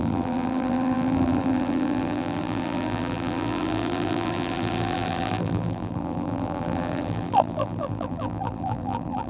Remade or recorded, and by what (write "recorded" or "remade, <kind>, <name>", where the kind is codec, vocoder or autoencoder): remade, vocoder, BigVGAN v2